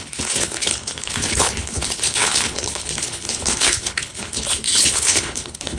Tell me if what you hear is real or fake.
fake